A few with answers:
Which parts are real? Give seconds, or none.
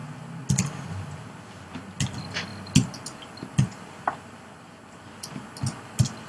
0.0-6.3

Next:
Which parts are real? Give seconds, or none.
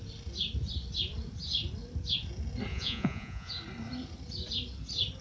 0.0-2.7; 3.5-5.2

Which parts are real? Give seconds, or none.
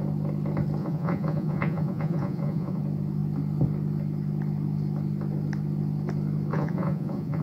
0.0-0.8; 2.8-6.5